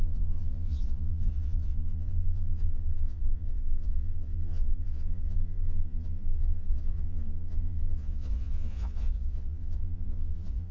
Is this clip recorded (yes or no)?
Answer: no